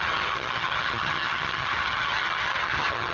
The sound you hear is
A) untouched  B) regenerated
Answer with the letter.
B